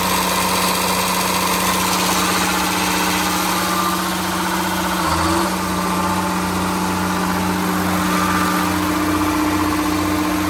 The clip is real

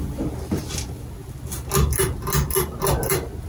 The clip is real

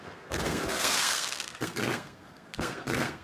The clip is fake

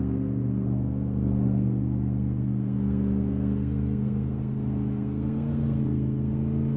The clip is fake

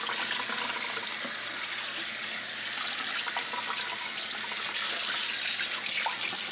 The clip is real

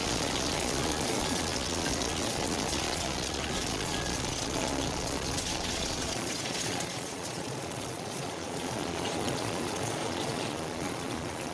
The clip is fake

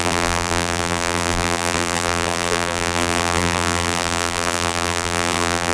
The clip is fake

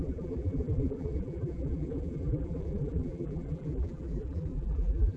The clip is fake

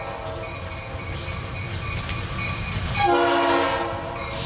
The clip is real